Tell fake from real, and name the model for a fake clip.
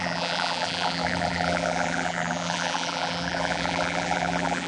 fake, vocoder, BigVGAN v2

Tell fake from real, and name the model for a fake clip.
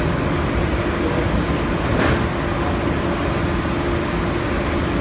real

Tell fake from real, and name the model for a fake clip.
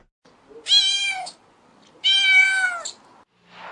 real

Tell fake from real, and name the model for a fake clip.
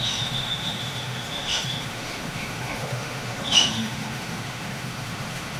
fake, autoencoder, DAC-VAE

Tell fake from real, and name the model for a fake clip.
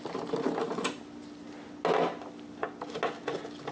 real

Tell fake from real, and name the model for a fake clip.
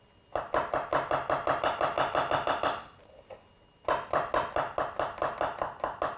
real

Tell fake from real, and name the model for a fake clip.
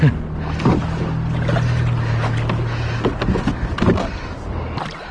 real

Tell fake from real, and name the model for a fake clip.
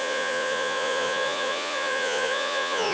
fake, vocoder, Vocos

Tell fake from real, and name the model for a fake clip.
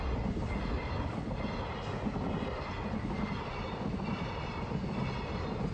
real